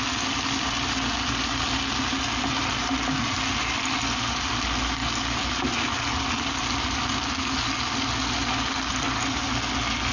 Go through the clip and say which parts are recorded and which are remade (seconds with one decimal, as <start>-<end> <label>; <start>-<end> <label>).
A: 0.0-10.1 recorded